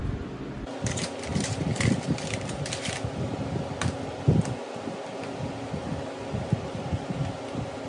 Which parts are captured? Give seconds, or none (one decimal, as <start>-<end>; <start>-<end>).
0.0-7.9